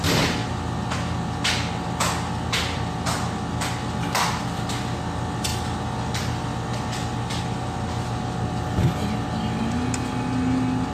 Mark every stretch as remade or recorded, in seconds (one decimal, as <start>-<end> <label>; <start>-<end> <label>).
0.0-10.9 recorded